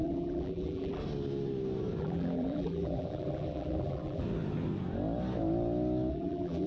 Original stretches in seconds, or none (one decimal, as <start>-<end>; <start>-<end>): 1.0-2.0; 4.2-6.1